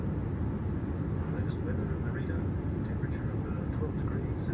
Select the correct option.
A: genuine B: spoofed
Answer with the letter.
A